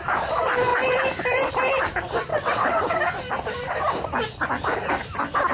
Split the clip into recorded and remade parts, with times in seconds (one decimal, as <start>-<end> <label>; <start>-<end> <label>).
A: 0.0-2.3 recorded; 2.3-2.9 remade; 2.9-5.5 recorded